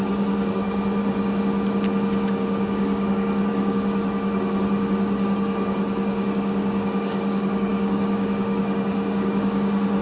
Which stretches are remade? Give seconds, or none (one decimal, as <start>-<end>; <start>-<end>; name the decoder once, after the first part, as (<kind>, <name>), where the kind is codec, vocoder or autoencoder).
0.0-1.0 (codec, DAC); 2.3-10.0

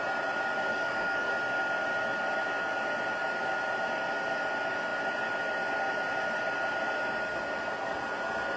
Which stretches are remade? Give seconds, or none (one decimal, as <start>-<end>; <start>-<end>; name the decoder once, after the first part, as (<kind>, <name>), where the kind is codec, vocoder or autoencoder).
0.7-1.3 (codec, DAC)

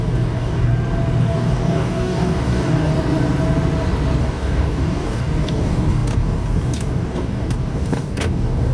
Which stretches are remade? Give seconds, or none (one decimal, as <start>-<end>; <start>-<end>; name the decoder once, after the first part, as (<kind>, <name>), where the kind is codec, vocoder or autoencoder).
0.0-0.7 (codec, DAC); 1.2-2.9; 4.2-8.7

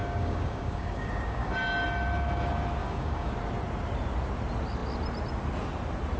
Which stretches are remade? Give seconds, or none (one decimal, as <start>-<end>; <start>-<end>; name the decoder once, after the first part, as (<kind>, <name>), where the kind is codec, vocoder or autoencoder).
0.0-1.5 (codec, DAC); 2.8-3.3

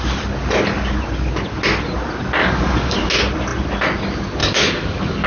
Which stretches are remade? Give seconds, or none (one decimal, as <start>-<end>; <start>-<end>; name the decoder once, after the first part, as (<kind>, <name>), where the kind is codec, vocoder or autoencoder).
2.4-3.1 (codec, DAC); 4.4-5.3

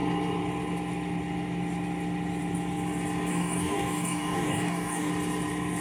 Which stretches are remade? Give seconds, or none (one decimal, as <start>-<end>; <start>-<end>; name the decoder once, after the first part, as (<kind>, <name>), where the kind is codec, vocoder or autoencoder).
3.3-5.1 (codec, DAC)